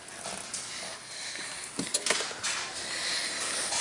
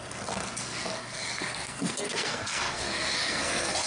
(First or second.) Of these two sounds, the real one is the first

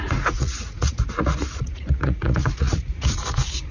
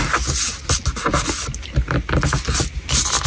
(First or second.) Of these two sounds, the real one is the second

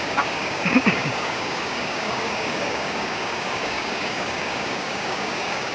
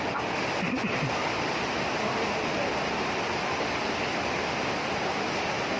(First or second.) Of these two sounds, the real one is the second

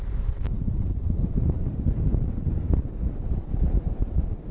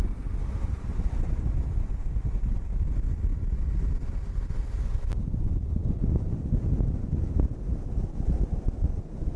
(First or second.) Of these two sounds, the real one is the second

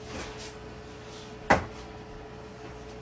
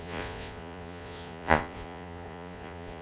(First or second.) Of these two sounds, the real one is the first